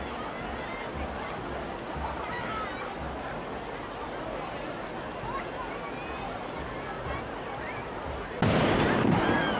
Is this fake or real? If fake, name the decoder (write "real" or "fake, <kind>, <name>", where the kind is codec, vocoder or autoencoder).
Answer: real